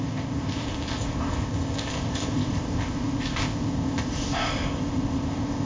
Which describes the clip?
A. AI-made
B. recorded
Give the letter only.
A